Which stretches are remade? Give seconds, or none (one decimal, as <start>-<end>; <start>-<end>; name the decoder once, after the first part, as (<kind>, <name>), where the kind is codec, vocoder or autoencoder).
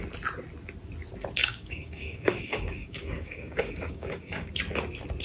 1.4-4.5 (codec, DAC)